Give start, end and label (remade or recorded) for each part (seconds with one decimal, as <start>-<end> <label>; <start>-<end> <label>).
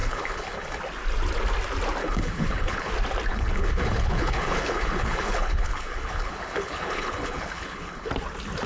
0.0-0.8 remade; 0.8-2.0 recorded; 2.0-2.9 remade; 2.9-3.3 recorded; 3.3-8.1 remade; 8.1-8.7 recorded